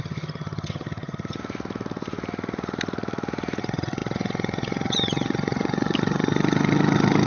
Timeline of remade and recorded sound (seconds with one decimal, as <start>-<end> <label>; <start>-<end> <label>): 0.0-1.4 remade; 1.4-3.6 recorded; 3.6-7.3 remade